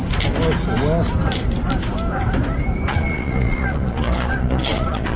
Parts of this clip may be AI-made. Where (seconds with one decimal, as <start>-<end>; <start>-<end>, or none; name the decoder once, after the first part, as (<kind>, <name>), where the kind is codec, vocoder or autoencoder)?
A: 2.9-5.2 (vocoder, Vocos)